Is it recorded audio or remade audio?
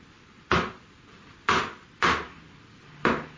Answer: remade